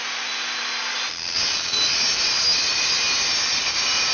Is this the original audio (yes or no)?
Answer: yes